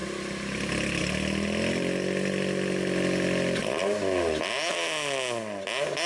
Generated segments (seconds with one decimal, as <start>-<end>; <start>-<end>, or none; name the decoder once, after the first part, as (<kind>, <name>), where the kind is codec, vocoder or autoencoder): none